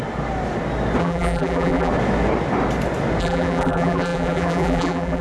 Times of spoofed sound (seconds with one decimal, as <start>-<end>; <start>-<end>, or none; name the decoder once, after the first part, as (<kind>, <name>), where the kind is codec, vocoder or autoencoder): 1.0-1.9 (vocoder, BigVGAN v2); 3.2-5.2